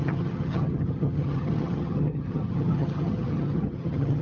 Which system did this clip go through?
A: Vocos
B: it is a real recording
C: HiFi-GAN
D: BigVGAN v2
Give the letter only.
C